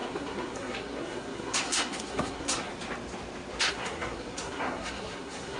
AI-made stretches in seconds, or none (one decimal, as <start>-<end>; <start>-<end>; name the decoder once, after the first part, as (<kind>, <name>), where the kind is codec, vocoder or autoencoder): 0.0-2.7 (codec, SNAC); 3.7-5.6